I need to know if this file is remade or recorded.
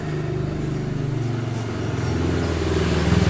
recorded